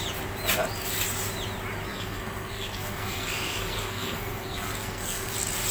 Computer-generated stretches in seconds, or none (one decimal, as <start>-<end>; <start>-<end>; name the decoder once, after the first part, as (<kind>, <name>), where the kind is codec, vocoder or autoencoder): 1.9-5.3 (codec, SNAC)